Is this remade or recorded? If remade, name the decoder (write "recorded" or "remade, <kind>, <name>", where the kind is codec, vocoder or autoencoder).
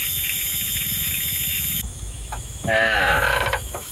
remade, autoencoder, DAC-VAE